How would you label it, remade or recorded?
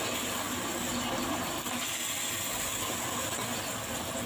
recorded